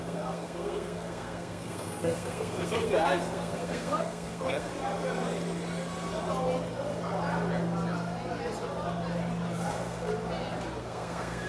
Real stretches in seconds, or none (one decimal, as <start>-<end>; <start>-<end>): 4.7-9.7; 10.1-10.8